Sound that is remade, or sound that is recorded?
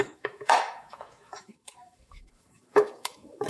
remade